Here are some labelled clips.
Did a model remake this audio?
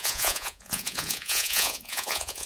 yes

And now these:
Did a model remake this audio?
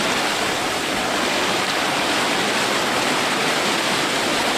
no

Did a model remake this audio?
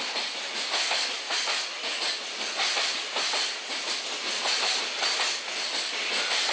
no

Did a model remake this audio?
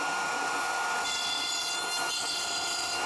no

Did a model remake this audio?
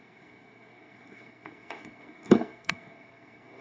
yes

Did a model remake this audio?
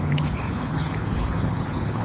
yes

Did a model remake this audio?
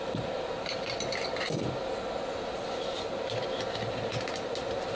no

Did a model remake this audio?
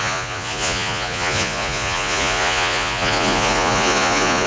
yes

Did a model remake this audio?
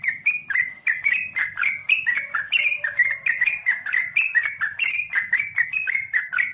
no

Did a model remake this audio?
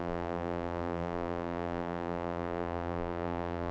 yes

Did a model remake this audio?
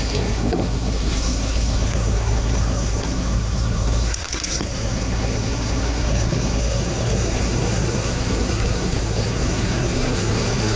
yes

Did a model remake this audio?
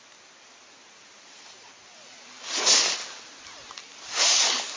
no